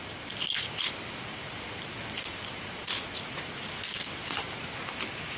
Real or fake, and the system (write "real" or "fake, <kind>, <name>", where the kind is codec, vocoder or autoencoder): real